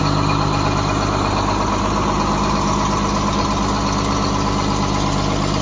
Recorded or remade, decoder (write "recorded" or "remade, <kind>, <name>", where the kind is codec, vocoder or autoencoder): recorded